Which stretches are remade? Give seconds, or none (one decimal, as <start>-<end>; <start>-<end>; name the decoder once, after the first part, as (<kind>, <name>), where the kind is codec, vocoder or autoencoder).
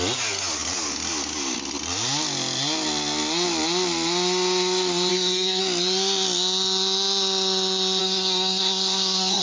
5.1-5.6 (codec, SNAC); 8.0-9.4